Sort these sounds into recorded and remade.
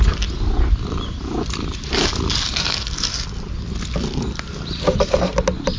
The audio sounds recorded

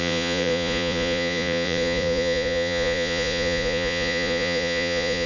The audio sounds remade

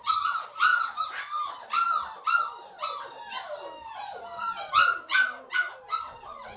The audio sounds recorded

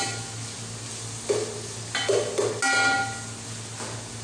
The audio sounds recorded